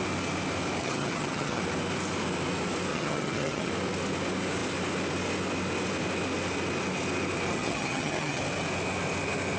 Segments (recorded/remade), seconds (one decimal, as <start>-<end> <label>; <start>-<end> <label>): 0.0-0.8 recorded; 0.8-1.6 remade; 1.6-2.9 recorded; 2.9-3.7 remade; 3.7-7.5 recorded; 7.5-8.4 remade; 8.4-9.6 recorded